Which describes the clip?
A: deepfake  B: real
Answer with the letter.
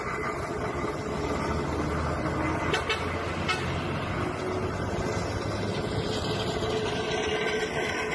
B